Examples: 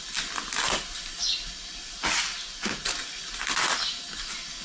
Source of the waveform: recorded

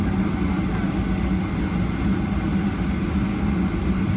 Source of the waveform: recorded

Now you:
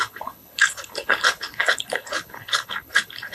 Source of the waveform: remade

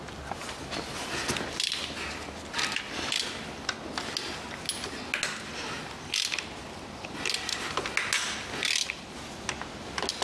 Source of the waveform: recorded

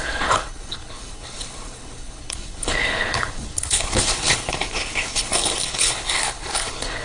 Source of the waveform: remade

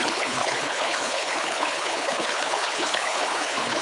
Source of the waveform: remade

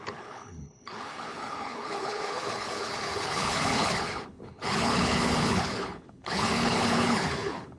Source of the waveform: remade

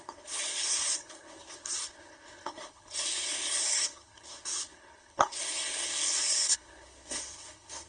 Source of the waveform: remade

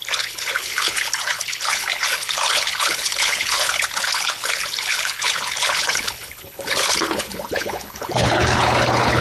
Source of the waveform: remade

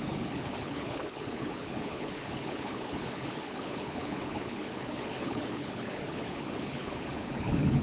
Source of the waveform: remade